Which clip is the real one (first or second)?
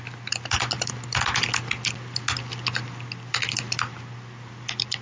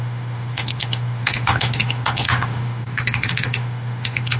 first